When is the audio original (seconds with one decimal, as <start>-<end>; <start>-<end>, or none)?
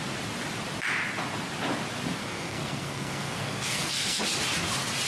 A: 0.0-2.2; 4.2-5.1